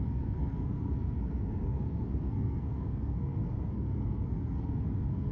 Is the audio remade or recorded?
remade